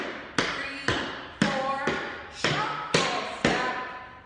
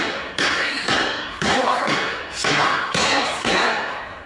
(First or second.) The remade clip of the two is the second